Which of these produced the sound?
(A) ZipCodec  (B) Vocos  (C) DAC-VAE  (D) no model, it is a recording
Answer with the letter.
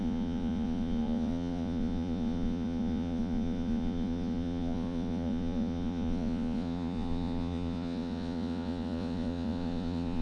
B